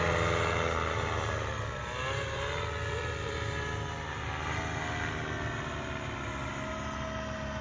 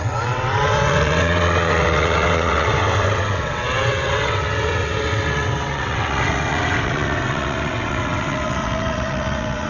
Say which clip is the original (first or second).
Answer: first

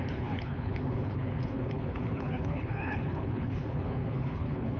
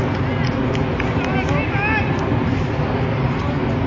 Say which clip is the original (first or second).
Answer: second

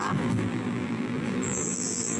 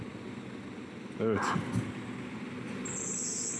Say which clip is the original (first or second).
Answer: second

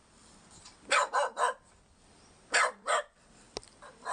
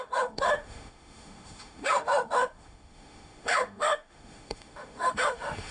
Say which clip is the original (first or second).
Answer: first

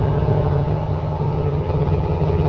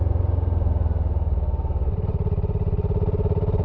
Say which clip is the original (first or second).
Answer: second